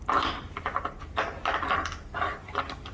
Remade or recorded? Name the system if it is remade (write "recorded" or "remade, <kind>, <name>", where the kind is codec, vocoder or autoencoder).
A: recorded